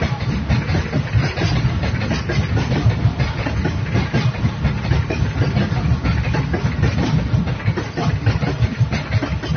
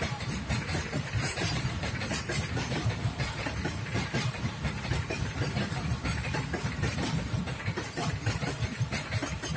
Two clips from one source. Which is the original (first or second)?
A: first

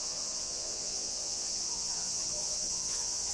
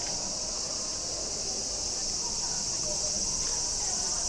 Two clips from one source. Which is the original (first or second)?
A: second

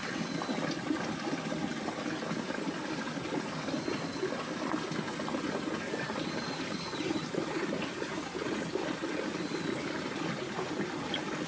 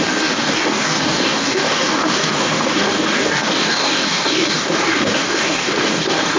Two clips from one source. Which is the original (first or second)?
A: first